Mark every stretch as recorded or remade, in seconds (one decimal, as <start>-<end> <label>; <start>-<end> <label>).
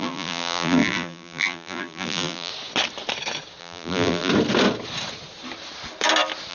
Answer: 0.0-2.5 remade; 2.5-3.6 recorded; 3.6-4.3 remade; 4.3-6.5 recorded